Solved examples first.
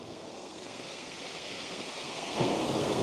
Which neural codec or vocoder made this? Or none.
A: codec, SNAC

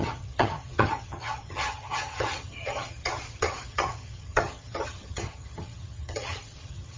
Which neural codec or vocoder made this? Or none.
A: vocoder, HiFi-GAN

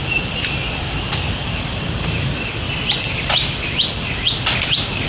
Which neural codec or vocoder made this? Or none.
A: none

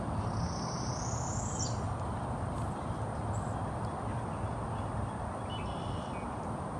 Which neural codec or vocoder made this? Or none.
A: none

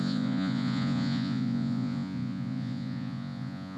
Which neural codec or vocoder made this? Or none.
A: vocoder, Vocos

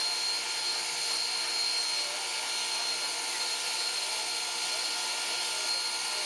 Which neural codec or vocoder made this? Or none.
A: none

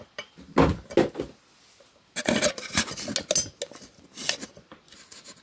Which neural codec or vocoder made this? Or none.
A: none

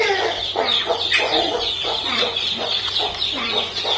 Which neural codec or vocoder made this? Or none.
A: vocoder, Vocos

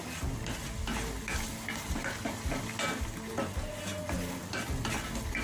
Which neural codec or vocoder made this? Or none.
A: none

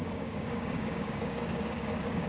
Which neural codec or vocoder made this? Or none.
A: codec, DAC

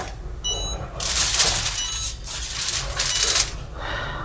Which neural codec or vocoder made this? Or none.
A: none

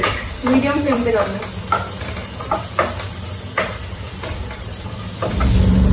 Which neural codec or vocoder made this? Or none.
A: vocoder, BigVGAN v2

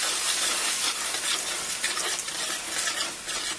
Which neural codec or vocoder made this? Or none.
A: none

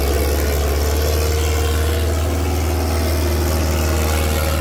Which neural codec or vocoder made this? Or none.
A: none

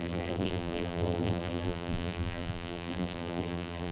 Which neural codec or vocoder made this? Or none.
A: vocoder, BigVGAN v2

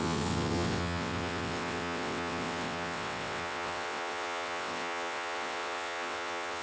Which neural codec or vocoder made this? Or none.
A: vocoder, WaveNeXt